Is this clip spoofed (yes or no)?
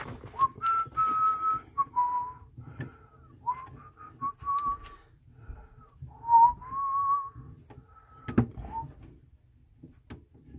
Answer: no